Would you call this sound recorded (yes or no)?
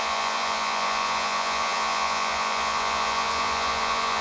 no